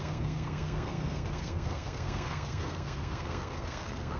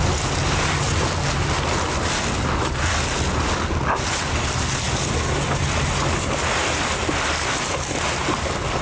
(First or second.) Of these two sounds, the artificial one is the first